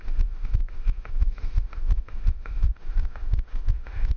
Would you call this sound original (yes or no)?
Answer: no